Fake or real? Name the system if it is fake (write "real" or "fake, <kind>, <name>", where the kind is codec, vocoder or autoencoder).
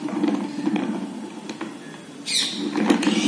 real